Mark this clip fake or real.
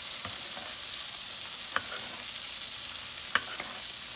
real